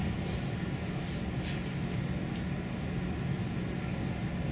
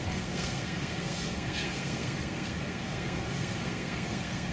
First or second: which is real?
first